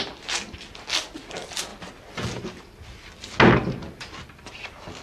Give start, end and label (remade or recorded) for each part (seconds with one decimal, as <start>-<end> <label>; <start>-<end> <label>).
0.0-5.0 recorded